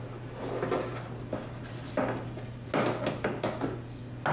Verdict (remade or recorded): recorded